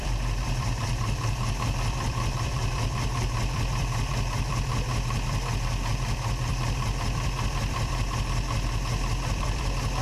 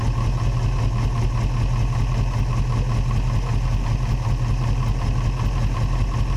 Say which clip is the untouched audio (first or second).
second